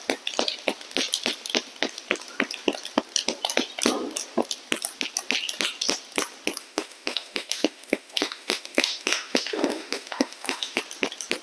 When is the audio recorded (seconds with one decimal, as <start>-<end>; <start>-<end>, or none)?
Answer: 0.0-6.6; 10.8-11.4